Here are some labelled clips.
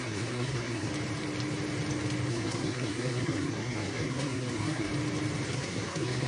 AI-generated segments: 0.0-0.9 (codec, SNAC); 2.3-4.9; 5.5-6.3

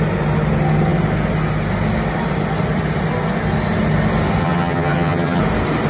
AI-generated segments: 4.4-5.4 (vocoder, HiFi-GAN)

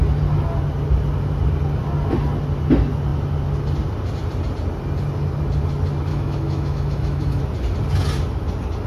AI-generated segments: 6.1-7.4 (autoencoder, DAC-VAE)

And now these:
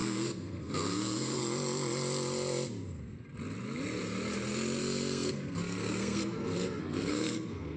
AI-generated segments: 0.0-1.4 (codec, SNAC); 4.8-7.8

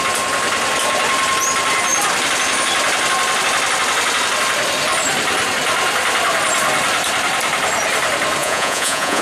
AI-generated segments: 8.4-9.2 (vocoder, Vocos)

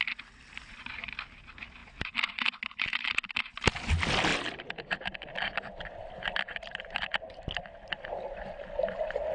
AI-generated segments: none